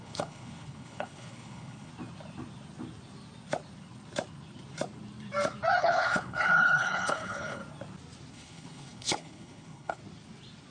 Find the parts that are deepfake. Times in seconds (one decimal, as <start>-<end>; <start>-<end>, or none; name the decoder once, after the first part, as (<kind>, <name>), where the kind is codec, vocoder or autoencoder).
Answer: 0.0-1.9 (codec, HILCodec); 5.8-7.6; 8.3-10.0

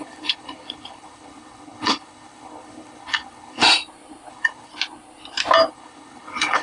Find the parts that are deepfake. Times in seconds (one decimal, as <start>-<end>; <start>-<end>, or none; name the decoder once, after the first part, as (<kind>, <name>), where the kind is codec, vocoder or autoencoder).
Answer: 0.0-3.6 (codec, HILCodec); 4.3-4.7; 5.7-6.6

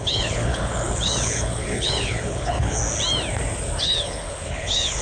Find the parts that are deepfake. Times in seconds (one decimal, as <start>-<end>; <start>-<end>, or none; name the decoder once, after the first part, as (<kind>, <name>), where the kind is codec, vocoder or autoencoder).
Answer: 0.0-2.8 (codec, HILCodec); 3.8-5.0